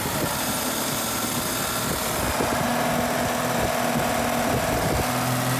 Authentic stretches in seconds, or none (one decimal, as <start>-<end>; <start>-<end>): 0.0-5.6